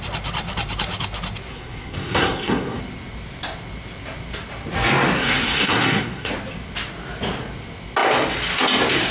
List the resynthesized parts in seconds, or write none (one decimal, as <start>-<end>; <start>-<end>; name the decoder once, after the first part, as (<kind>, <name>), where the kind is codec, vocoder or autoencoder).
1.5-2.8 (codec, SNAC); 5.2-6.3